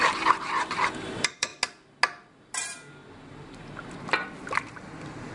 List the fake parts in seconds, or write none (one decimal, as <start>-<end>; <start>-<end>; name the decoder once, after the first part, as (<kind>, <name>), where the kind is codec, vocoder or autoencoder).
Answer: 0.0-1.5 (vocoder, BigVGAN v2); 4.0-5.3